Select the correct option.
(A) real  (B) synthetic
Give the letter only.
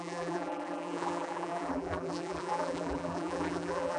B